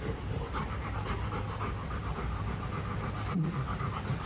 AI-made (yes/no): no